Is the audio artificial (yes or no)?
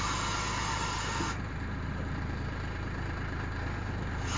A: no